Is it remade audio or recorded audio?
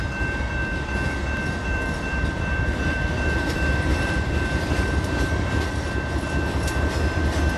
remade